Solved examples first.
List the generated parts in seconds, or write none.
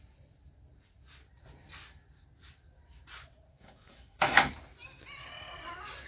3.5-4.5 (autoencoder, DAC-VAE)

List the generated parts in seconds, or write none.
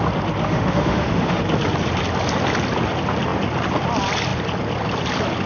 0.4-1.4 (autoencoder, DAC-VAE)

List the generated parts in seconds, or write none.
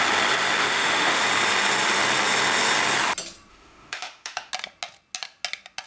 0.6-1.2 (autoencoder, DAC-VAE); 3.5-4.5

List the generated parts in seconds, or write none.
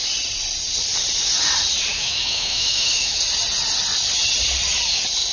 1.9-3.2 (autoencoder, DAC-VAE)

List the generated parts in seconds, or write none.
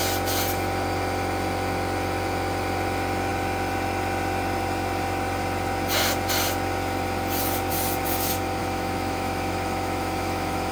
8.6-10.7 (autoencoder, DAC-VAE)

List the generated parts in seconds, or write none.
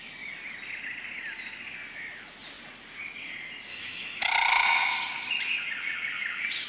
3.7-4.5 (autoencoder, DAC-VAE)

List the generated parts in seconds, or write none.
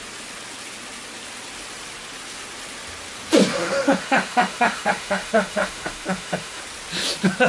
3.5-6.6 (autoencoder, DAC-VAE)